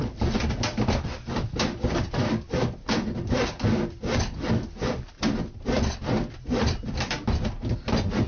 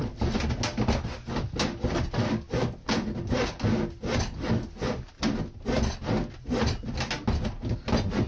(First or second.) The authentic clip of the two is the second